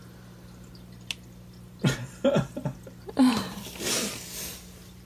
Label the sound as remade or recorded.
recorded